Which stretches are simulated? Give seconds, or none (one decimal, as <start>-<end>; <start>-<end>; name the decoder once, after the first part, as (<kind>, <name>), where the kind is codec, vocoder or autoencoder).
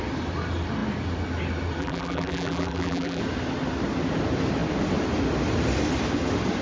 1.8-3.2 (vocoder, BigVGAN v2)